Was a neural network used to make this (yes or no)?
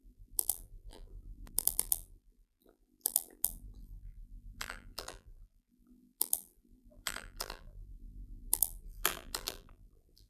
yes